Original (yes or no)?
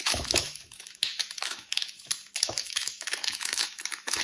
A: no